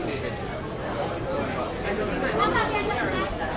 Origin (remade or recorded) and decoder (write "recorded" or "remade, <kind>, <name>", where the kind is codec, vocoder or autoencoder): recorded